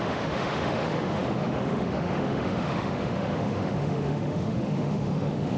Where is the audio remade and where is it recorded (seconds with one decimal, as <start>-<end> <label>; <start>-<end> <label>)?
0.0-5.6 remade